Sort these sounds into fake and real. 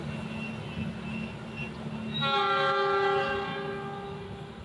real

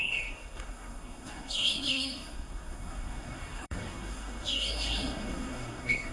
fake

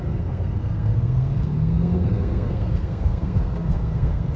fake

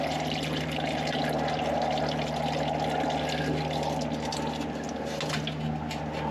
real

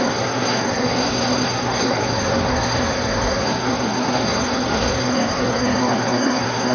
fake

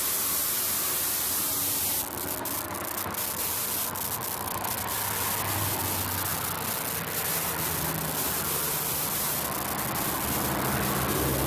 real